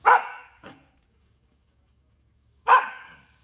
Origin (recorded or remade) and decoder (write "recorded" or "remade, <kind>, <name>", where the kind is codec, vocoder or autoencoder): remade, codec, DAC